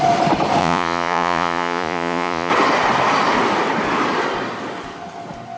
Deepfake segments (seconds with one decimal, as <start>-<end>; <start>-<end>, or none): 0.6-2.5